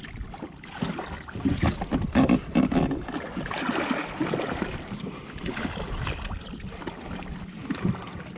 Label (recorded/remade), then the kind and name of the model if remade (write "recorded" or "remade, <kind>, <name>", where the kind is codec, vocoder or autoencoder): recorded